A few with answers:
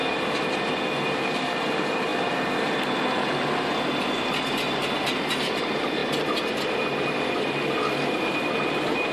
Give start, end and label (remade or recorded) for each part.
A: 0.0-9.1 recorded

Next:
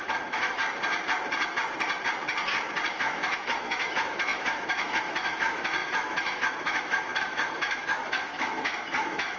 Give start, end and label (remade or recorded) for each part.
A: 0.0-0.6 remade; 0.6-2.9 recorded; 2.9-9.4 remade